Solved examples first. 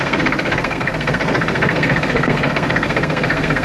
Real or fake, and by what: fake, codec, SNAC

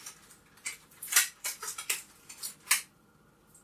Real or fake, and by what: real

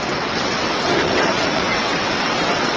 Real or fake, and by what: fake, vocoder, WaveNeXt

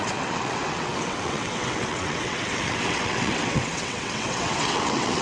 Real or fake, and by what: fake, vocoder, WaveNeXt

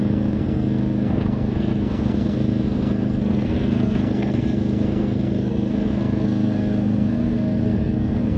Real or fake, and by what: fake, codec, SNAC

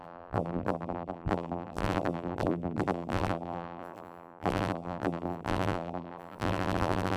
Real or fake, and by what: fake, vocoder, BigVGAN v2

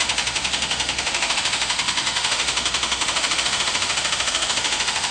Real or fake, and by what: fake, autoencoder, DAC-VAE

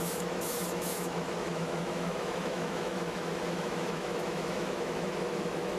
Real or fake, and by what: fake, autoencoder, DAC-VAE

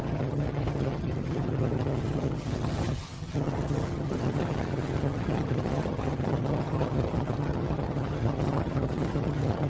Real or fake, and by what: fake, vocoder, HiFi-GAN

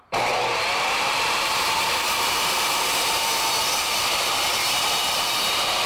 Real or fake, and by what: fake, vocoder, BigVGAN v2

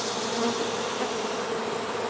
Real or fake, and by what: real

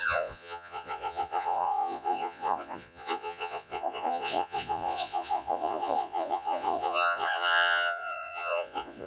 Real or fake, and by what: fake, vocoder, Vocos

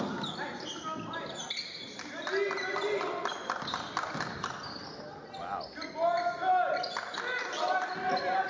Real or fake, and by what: real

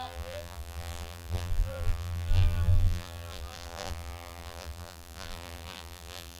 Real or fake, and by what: fake, vocoder, BigVGAN v2